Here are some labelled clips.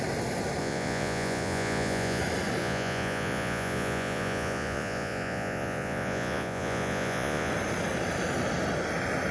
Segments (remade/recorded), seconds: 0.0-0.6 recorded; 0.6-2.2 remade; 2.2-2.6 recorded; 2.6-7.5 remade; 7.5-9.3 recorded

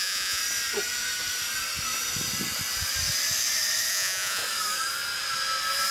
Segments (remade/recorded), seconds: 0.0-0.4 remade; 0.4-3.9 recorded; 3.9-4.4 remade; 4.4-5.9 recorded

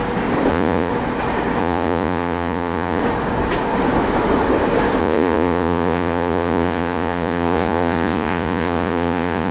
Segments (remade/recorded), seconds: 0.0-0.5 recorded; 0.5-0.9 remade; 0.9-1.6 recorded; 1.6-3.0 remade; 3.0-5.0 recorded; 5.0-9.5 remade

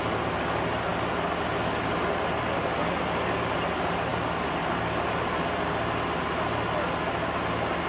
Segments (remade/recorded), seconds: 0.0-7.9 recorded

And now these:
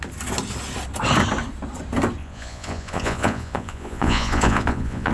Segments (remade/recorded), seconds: 0.0-2.2 recorded; 2.2-5.1 remade

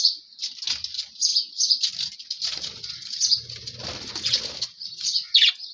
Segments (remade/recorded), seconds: 0.0-5.7 recorded

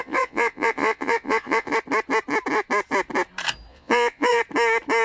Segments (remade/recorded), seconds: 0.0-1.7 remade; 1.7-3.7 recorded; 3.7-4.4 remade; 4.4-5.0 recorded